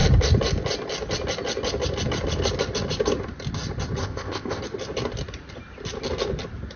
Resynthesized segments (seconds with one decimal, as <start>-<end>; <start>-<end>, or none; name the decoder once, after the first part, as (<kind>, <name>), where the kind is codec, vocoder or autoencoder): 4.0-4.6 (codec, ZipCodec)